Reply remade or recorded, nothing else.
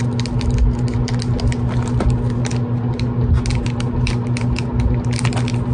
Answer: recorded